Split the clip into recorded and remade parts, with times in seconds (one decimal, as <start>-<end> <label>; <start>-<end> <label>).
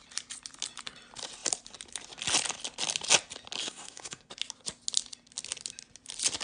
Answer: 0.0-3.6 recorded; 3.6-4.3 remade; 4.3-6.4 recorded